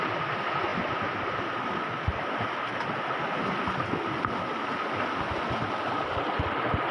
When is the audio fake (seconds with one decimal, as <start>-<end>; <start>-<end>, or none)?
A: none